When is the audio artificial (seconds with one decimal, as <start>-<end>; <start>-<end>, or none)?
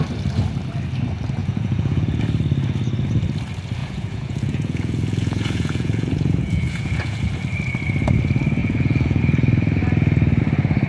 1.4-2.2; 3.8-7.2; 8.6-9.2